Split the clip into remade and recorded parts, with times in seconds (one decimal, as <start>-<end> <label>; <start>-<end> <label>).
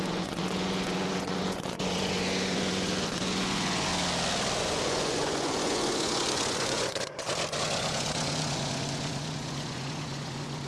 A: 0.0-3.9 remade; 3.9-4.6 recorded; 4.6-10.7 remade